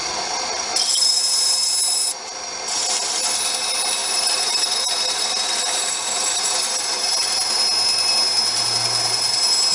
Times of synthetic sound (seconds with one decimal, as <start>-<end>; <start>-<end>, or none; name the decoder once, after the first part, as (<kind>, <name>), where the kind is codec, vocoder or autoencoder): 4.0-7.5 (vocoder, BigVGAN v2)